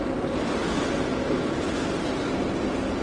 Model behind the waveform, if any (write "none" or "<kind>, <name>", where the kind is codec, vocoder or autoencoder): none